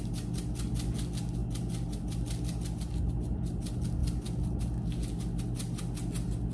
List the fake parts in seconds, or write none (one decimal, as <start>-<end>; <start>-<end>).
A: none